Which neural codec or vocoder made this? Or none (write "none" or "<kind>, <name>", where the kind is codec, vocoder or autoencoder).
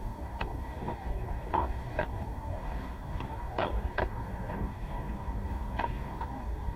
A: codec, DAC